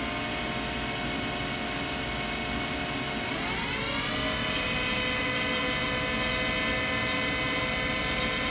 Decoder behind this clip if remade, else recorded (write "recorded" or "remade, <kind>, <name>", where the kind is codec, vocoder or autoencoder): recorded